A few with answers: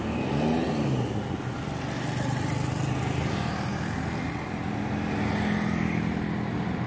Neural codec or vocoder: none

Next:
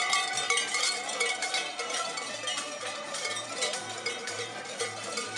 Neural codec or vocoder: vocoder, BigVGAN v2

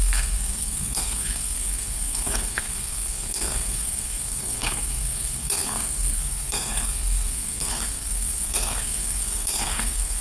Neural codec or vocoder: codec, SNAC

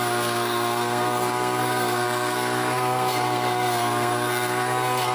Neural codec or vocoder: codec, SNAC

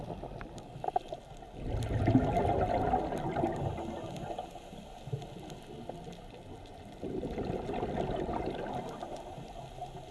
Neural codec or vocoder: none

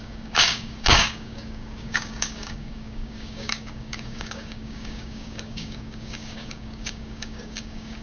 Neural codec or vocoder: codec, DAC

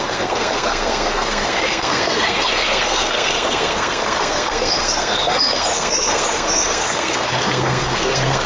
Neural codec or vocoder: codec, SNAC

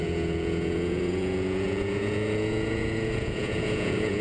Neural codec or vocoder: vocoder, Vocos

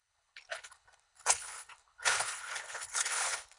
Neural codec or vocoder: codec, HILCodec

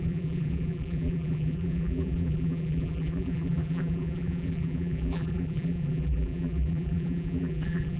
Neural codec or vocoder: vocoder, BigVGAN v2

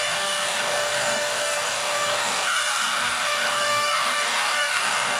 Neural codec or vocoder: codec, DAC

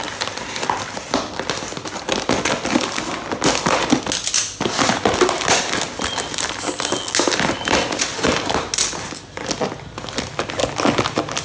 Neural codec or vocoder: none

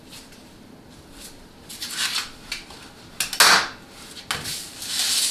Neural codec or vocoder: none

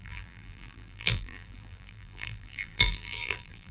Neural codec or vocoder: vocoder, BigVGAN v2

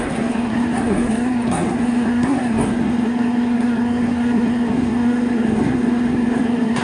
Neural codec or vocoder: codec, SNAC